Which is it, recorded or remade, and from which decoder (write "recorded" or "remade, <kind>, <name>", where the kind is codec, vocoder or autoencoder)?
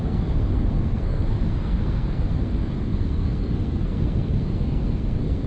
remade, codec, SNAC